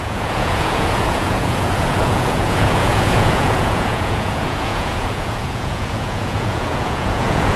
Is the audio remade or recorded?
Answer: remade